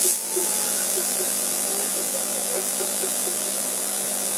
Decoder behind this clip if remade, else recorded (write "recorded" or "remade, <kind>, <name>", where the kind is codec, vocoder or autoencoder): remade, vocoder, BigVGAN v2